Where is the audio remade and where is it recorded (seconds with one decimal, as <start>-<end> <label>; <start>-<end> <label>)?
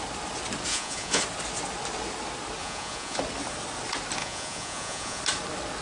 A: 0.0-0.7 recorded; 0.7-1.2 remade; 1.2-2.6 recorded; 2.6-3.2 remade; 3.2-4.2 recorded; 4.2-5.2 remade; 5.2-5.8 recorded